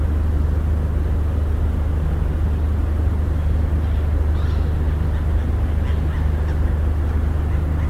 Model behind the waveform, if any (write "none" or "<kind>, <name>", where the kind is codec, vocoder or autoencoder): none